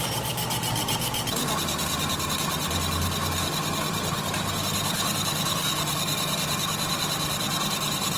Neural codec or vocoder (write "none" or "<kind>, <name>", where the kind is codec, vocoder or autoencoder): none